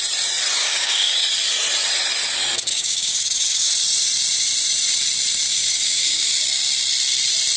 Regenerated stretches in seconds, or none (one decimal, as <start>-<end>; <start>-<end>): 0.6-1.2; 2.7-3.7; 5.5-6.3